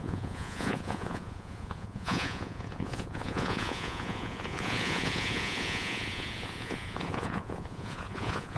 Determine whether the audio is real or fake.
fake